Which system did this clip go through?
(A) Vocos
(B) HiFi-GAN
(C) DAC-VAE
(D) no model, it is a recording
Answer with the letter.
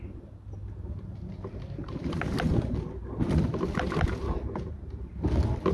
D